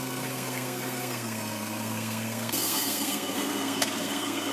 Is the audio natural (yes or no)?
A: no